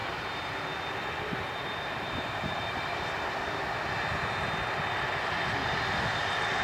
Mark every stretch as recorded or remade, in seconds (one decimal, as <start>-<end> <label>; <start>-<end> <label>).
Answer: 0.0-6.6 recorded

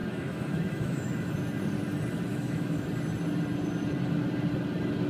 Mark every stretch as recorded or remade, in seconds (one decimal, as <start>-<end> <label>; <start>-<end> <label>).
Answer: 0.0-1.3 remade; 1.3-2.3 recorded; 2.3-2.9 remade; 2.9-5.1 recorded

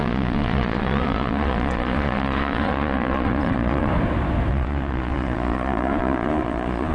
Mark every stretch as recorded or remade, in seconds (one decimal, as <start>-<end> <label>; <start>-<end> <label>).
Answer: 0.0-3.9 remade; 3.9-4.5 recorded; 4.5-6.9 remade

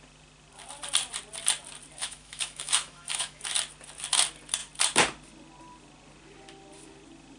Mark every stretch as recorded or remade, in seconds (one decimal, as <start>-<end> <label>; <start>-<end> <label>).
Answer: 0.0-2.0 recorded; 2.0-3.4 remade; 3.4-7.4 recorded

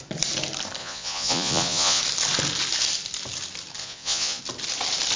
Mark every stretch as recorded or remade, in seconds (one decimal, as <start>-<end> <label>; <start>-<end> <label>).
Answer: 0.0-0.8 recorded; 0.8-2.0 remade; 2.0-3.8 recorded; 3.8-4.4 remade; 4.4-5.2 recorded

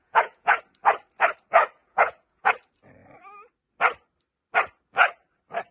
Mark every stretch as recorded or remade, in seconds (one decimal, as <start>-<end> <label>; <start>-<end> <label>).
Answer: 0.0-0.6 remade; 0.6-1.8 recorded; 1.8-2.5 remade; 2.5-5.7 recorded

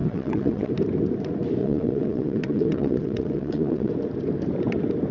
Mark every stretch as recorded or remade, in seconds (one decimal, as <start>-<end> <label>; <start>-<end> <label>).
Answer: 0.0-0.7 remade; 0.7-1.6 recorded; 1.6-3.9 remade; 3.9-5.1 recorded

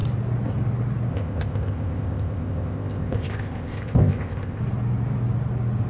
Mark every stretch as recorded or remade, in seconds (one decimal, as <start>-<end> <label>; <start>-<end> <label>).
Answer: 0.0-1.1 recorded; 1.1-4.6 remade; 4.6-5.9 recorded